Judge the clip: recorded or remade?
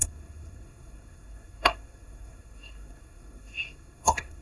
remade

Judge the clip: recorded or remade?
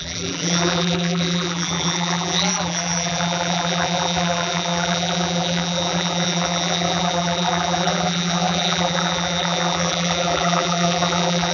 remade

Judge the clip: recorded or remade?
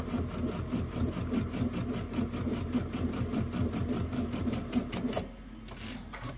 recorded